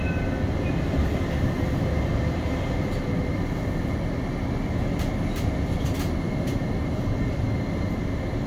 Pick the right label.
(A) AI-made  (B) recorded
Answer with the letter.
B